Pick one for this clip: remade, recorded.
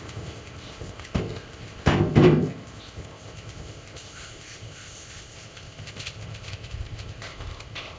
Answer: remade